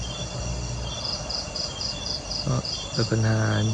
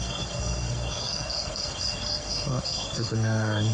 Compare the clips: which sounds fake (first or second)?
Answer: second